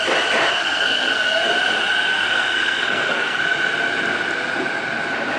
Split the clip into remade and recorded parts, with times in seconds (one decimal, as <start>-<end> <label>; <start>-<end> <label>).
0.0-0.5 recorded; 0.5-1.5 remade; 1.5-2.1 recorded; 2.1-3.4 remade; 3.4-5.4 recorded